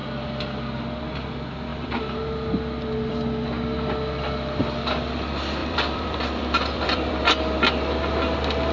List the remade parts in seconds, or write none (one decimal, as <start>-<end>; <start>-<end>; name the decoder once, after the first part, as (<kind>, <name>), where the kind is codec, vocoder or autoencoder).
1.7-3.1 (vocoder, BigVGAN v2); 5.6-7.1